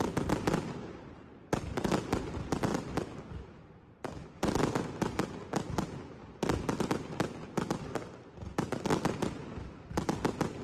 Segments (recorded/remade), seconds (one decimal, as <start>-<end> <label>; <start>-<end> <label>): 0.0-10.6 recorded